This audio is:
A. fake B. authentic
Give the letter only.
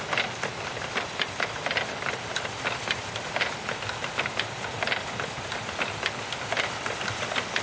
B